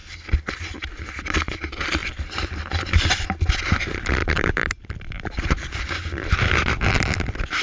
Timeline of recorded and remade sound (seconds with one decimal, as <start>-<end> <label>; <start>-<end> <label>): 0.0-2.0 recorded; 2.0-3.2 remade; 3.2-4.2 recorded; 4.2-6.5 remade; 6.5-7.6 recorded